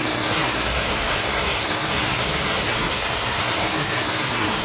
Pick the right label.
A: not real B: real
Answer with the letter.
A